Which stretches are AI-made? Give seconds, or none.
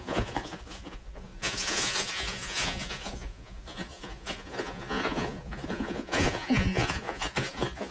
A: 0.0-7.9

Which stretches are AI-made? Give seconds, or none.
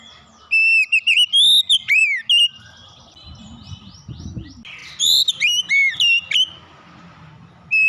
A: none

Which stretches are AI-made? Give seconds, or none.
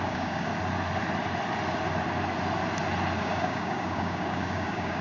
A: 0.0-0.5; 3.2-5.0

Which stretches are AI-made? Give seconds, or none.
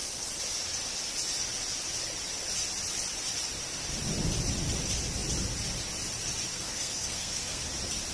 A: 6.5-7.6